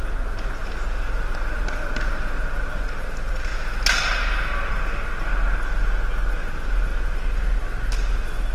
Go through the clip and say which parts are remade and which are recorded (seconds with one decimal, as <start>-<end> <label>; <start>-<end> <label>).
0.0-8.5 recorded